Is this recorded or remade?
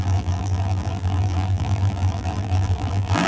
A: remade